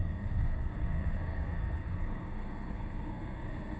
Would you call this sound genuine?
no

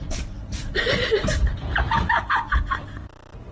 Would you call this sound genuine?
no